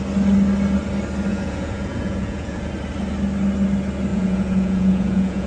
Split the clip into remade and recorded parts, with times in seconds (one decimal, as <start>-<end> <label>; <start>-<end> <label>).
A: 0.0-1.3 recorded; 1.3-2.7 remade; 2.7-4.1 recorded; 4.1-5.5 remade